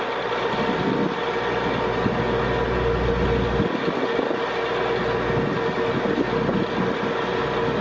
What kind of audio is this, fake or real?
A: real